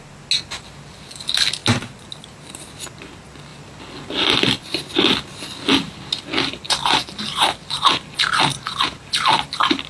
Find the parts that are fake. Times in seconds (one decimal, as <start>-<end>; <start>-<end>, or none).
none